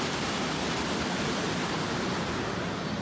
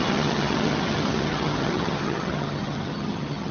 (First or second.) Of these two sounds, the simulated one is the second